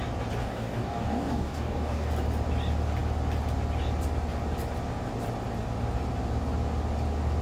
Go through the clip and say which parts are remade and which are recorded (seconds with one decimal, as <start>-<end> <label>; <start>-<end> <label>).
0.0-0.4 recorded; 0.4-2.1 remade; 2.1-7.4 recorded